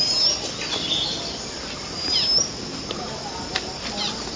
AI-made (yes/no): no